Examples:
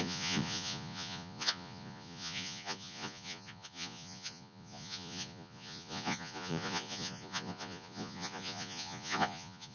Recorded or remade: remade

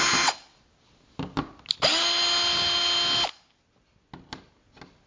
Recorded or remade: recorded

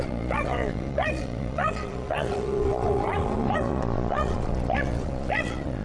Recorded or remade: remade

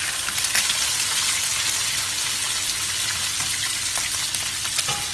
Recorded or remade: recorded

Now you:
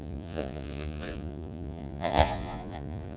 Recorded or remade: remade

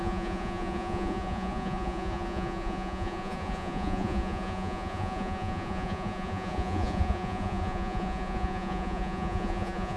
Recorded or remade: remade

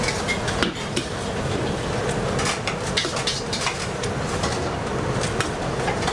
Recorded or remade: recorded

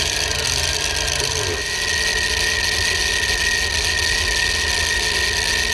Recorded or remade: recorded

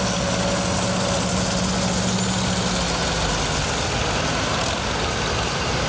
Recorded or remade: recorded